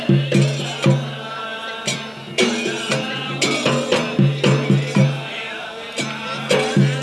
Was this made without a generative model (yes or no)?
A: yes